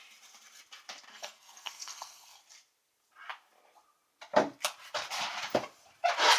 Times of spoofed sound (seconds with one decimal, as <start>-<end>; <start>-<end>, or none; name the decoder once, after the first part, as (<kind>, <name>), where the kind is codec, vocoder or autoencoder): 1.1-2.4 (codec, SNAC)